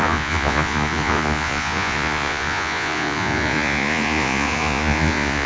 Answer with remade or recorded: remade